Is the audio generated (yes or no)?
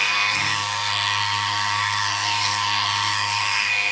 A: yes